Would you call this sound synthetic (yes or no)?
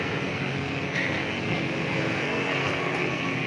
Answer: yes